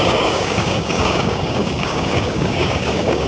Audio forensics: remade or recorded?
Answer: remade